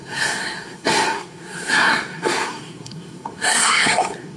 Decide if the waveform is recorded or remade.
remade